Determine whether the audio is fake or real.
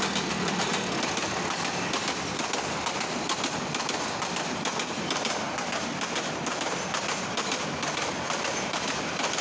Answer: real